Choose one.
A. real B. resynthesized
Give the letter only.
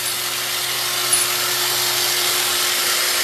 A